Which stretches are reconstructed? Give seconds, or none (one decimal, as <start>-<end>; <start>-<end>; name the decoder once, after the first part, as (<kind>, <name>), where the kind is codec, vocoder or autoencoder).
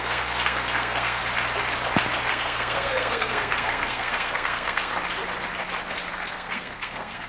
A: 0.0-1.2 (codec, SNAC); 2.3-4.9; 6.3-7.3